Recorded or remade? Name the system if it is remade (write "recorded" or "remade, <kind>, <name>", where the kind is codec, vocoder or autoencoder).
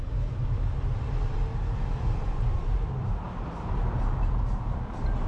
recorded